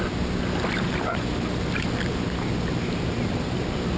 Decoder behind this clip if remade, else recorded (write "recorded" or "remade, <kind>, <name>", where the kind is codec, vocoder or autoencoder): recorded